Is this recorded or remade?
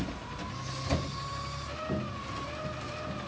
recorded